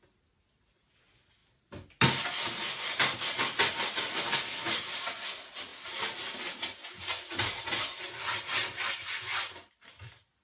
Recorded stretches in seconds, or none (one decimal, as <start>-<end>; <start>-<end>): 0.0-10.4